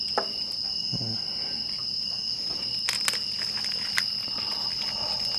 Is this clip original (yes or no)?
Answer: yes